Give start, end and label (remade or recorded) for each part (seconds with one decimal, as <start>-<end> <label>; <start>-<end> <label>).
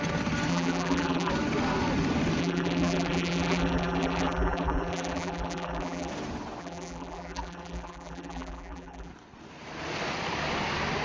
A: 0.0-0.5 recorded; 0.5-1.3 remade; 1.3-2.4 recorded; 2.4-6.1 remade; 6.1-6.6 recorded; 6.6-9.1 remade; 9.1-11.0 recorded